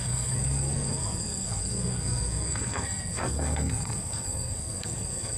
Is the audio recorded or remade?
remade